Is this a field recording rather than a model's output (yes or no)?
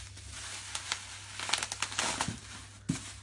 yes